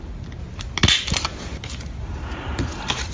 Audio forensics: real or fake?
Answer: real